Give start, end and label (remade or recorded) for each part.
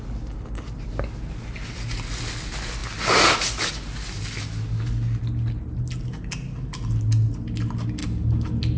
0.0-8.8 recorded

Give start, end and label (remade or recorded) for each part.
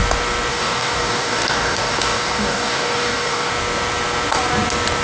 0.0-0.5 recorded; 0.5-3.5 remade; 3.5-5.0 recorded